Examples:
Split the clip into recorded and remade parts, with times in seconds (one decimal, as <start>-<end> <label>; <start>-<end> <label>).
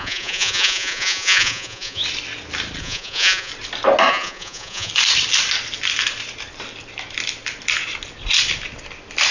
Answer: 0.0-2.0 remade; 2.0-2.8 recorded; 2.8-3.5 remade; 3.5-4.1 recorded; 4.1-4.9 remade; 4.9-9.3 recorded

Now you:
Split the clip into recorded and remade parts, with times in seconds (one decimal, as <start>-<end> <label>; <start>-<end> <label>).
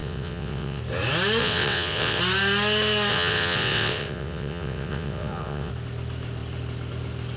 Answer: 0.0-0.8 remade; 0.8-1.4 recorded; 1.4-2.2 remade; 2.2-3.1 recorded; 3.1-5.7 remade; 5.7-7.4 recorded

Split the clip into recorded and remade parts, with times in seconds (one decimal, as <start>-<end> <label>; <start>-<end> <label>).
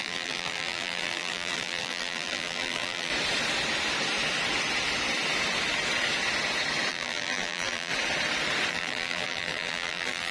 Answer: 0.0-3.1 remade; 3.1-6.9 recorded; 6.9-7.9 remade; 7.9-8.7 recorded; 8.7-10.3 remade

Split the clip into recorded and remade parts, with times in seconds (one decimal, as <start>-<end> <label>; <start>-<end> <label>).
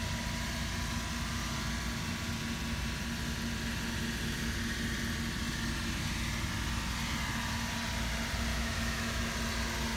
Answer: 0.0-8.5 recorded; 8.5-9.2 remade; 9.2-10.0 recorded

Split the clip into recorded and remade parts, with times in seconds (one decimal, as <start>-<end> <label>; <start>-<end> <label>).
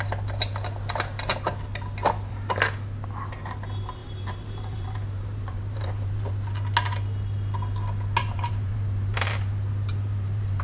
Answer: 0.0-4.0 recorded; 4.0-6.3 remade; 6.3-8.2 recorded; 8.2-10.6 remade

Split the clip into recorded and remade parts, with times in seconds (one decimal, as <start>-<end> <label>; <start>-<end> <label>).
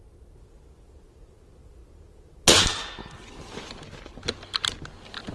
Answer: 0.0-5.3 recorded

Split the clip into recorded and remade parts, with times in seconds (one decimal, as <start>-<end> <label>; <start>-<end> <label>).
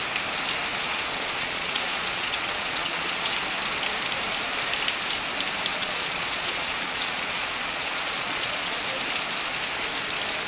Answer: 0.0-0.7 recorded; 0.7-3.3 remade; 3.3-5.7 recorded; 5.7-8.8 remade; 8.8-10.5 recorded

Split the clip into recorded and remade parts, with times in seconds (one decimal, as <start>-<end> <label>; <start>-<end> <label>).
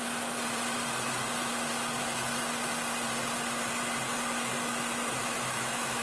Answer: 0.0-5.2 recorded; 5.2-6.0 remade